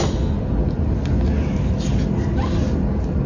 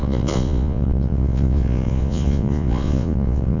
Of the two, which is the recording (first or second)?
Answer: first